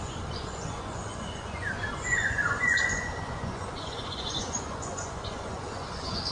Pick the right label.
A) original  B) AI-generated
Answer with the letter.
B